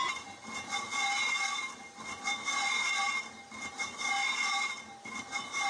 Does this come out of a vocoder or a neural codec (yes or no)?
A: no